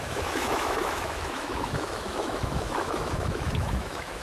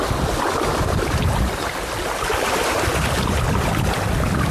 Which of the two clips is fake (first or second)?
first